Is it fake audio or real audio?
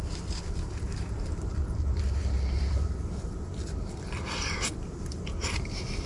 fake